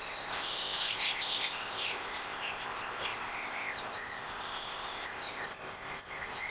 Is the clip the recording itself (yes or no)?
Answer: no